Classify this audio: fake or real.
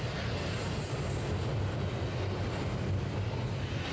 real